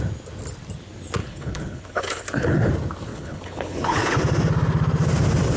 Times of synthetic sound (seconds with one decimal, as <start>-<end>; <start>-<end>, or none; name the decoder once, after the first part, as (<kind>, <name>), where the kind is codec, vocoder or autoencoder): 1.2-2.7 (codec, HILCodec); 3.1-4.1